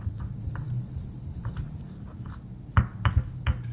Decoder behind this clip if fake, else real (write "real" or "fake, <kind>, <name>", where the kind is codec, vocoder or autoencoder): real